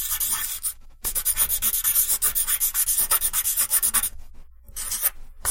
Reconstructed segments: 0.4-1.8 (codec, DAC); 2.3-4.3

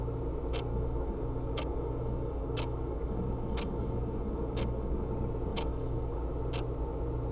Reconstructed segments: 0.7-5.1 (codec, DAC); 5.5-6.2